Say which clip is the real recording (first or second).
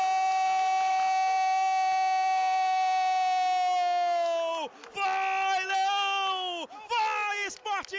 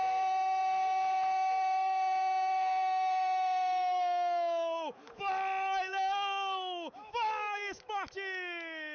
first